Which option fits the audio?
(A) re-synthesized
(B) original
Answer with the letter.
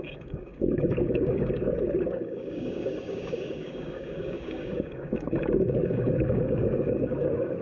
A